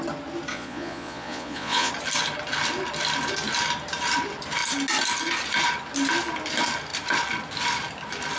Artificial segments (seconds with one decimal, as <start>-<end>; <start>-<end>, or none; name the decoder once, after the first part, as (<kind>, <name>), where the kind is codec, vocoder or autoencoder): 0.5-1.9 (vocoder, Vocos)